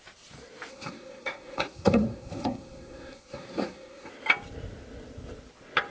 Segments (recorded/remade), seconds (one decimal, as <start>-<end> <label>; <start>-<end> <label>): 0.0-0.7 recorded; 0.7-4.1 remade; 4.1-5.9 recorded

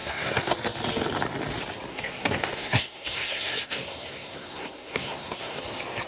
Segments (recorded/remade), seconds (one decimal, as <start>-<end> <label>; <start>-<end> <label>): 0.0-0.5 remade; 0.5-1.9 recorded; 1.9-5.6 remade; 5.6-6.1 recorded